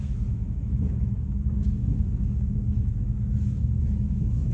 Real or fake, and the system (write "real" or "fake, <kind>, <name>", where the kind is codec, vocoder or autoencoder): fake, autoencoder, DAC-VAE